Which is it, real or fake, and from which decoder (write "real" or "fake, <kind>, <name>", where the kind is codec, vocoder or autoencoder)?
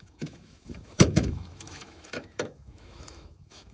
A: fake, autoencoder, DAC-VAE